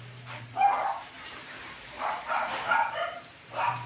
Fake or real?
fake